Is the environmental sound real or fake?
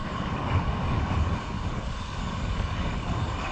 fake